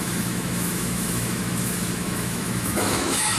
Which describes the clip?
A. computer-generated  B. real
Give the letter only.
A